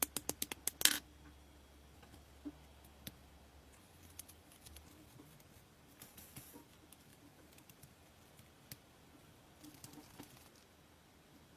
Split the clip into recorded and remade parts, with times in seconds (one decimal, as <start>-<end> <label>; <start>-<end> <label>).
0.0-7.1 recorded; 7.1-8.1 remade; 8.1-11.6 recorded